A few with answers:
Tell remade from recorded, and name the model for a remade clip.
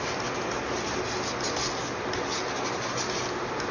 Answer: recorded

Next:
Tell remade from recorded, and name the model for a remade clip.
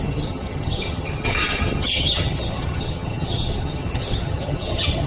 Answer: remade, vocoder, HiFi-GAN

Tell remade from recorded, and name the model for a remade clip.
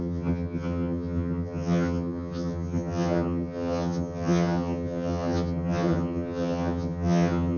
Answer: remade, vocoder, HiFi-GAN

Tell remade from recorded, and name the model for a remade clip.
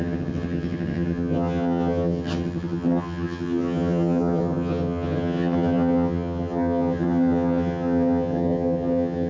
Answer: remade, vocoder, HiFi-GAN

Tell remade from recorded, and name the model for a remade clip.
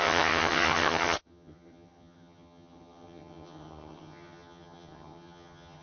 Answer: remade, vocoder, HiFi-GAN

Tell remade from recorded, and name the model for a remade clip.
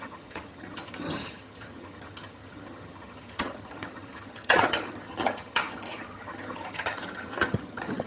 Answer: remade, vocoder, HiFi-GAN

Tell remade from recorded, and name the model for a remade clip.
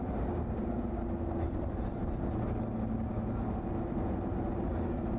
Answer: recorded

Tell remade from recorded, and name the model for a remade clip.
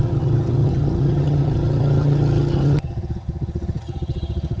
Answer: remade, vocoder, HiFi-GAN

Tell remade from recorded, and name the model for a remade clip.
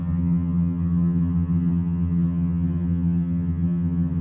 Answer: remade, vocoder, HiFi-GAN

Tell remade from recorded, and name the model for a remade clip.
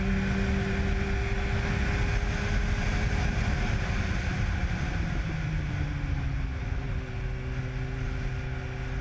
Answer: recorded